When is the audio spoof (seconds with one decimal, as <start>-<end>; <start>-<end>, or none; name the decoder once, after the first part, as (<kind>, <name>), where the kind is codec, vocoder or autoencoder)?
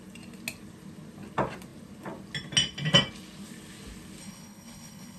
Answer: 4.2-5.2 (codec, HILCodec)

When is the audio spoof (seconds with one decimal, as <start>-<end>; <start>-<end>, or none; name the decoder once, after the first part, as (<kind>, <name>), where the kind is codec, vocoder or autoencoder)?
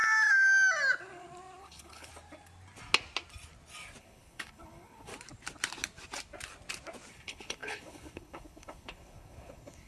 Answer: 1.6-2.1 (codec, HILCodec); 4.0-5.1; 7.1-9.9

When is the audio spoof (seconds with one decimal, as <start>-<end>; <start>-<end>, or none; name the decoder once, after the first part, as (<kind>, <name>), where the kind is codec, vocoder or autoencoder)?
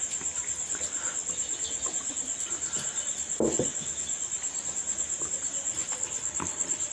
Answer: 6.0-6.9 (codec, HILCodec)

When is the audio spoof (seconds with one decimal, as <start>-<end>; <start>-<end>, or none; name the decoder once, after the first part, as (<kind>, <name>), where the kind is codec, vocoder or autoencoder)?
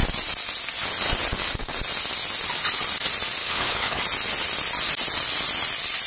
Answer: 3.4-4.0 (codec, HILCodec)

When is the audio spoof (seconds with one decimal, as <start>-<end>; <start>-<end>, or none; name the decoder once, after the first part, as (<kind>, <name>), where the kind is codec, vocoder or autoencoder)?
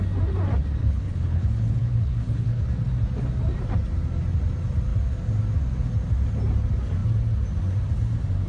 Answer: 0.8-2.7 (codec, HILCodec)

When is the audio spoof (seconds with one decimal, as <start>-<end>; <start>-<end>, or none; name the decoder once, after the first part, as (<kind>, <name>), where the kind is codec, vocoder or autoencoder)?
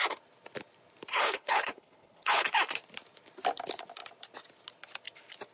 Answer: 1.2-2.5 (codec, HILCodec)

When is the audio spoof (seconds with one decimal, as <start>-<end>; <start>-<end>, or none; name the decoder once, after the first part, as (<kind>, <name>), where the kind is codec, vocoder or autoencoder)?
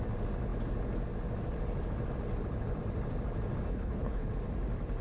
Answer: 3.7-4.3 (codec, HILCodec)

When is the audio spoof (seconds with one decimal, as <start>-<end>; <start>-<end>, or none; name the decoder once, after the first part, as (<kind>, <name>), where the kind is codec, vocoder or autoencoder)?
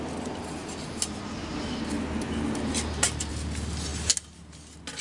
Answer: none